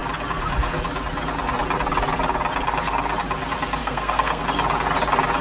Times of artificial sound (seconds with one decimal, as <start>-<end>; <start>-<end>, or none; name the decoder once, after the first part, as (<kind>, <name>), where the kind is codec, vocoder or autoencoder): 3.8-4.4 (codec, SNAC)